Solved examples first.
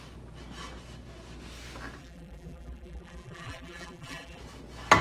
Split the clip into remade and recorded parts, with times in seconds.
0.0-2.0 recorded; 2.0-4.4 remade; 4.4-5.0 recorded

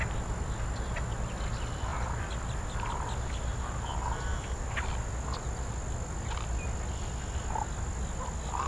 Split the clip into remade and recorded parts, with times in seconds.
0.0-1.9 recorded; 1.9-2.9 remade; 2.9-4.3 recorded; 4.3-5.7 remade; 5.7-8.7 recorded